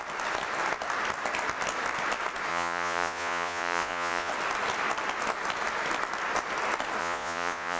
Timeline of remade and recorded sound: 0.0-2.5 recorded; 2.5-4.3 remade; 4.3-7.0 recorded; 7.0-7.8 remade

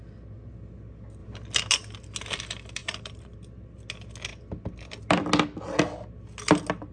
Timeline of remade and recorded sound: 0.0-2.8 recorded; 2.8-3.8 remade; 3.8-6.9 recorded

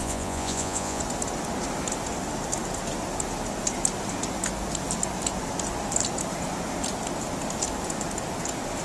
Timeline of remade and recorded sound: 0.0-1.0 remade; 1.0-8.8 recorded

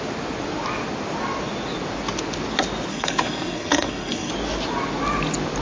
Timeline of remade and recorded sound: 0.0-2.9 recorded; 2.9-4.3 remade; 4.3-5.6 recorded

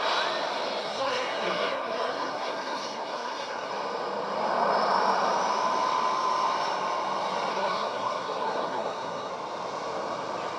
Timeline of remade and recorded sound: 0.0-0.8 recorded; 0.8-3.7 remade; 3.7-7.5 recorded; 7.5-9.3 remade; 9.3-10.6 recorded

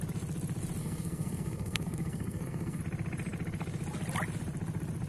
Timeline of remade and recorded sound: 0.0-0.8 recorded; 0.8-2.8 remade; 2.8-5.1 recorded

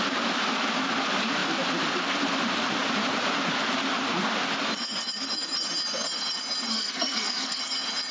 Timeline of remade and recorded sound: 0.0-6.7 recorded; 6.7-7.6 remade; 7.6-8.1 recorded